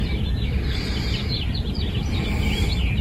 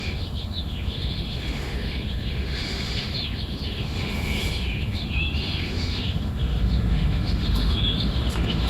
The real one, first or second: first